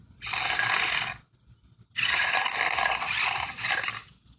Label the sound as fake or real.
real